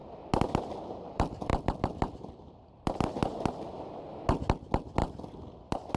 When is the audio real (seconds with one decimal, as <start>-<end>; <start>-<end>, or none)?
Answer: 0.0-0.9; 3.2-5.0